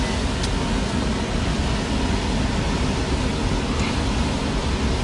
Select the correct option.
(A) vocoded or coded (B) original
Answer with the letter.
B